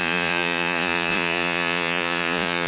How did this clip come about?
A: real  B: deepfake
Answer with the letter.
B